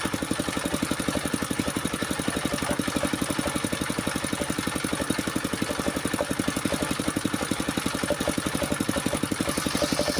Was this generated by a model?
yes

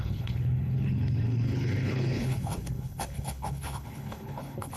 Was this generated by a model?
yes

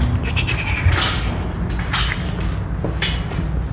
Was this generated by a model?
no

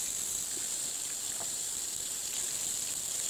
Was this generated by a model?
no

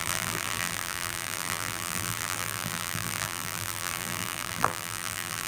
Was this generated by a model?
yes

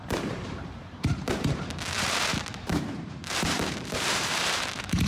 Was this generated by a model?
yes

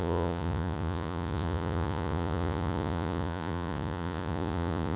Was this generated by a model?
yes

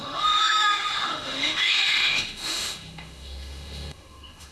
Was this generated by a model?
yes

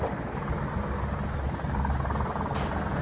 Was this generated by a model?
no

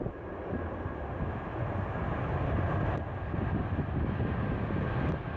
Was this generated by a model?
no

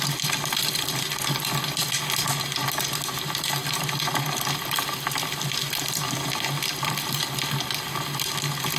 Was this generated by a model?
no